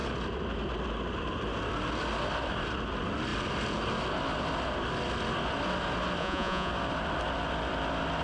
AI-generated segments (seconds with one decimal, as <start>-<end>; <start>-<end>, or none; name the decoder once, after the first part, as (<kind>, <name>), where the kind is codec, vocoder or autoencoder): 6.2-6.7 (vocoder, Vocos)